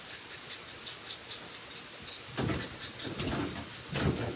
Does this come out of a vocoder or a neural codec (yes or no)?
no